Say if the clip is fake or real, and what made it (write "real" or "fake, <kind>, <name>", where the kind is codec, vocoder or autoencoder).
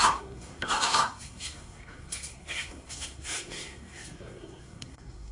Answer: fake, codec, SNAC